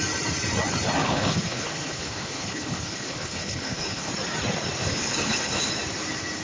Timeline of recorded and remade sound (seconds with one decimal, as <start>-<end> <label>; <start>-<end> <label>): 0.0-1.0 recorded; 1.0-4.1 remade; 4.1-4.8 recorded; 4.8-5.7 remade; 5.7-6.4 recorded